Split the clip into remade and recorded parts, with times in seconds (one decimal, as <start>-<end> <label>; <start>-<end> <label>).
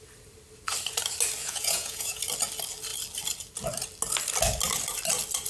0.0-1.4 recorded; 1.4-2.2 remade; 2.2-5.5 recorded